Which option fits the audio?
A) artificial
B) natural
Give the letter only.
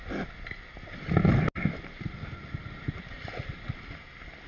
B